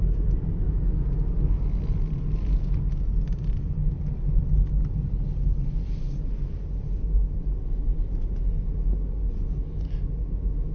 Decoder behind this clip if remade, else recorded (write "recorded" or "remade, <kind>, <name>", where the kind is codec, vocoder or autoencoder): recorded